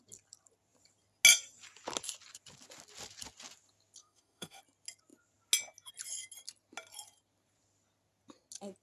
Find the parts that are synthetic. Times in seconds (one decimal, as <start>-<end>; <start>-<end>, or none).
4.0-4.6